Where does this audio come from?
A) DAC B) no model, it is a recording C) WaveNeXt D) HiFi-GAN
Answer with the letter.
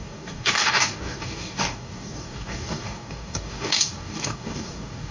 A